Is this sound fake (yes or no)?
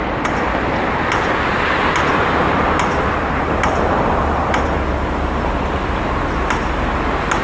no